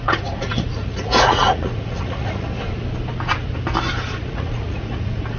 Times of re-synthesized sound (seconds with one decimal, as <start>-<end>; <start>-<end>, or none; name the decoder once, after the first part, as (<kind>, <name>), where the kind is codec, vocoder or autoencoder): 0.0-2.5 (vocoder, Vocos); 4.2-5.4